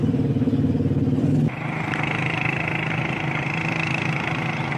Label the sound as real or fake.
real